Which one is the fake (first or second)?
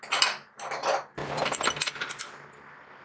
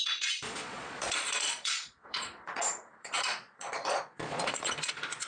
second